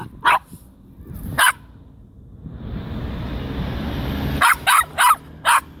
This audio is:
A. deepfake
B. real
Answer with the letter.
B